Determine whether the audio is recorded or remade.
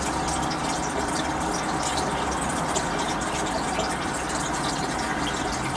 recorded